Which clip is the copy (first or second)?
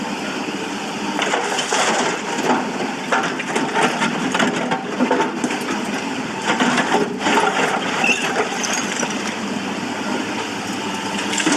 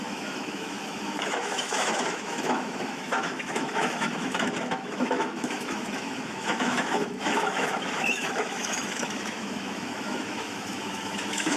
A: second